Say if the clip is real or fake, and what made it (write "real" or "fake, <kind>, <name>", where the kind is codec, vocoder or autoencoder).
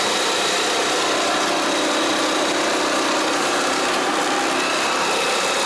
real